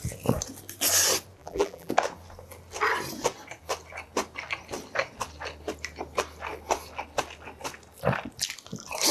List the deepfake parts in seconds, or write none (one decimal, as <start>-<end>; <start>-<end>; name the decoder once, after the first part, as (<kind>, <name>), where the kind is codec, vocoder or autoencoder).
1.4-1.9 (vocoder, BigVGAN v2)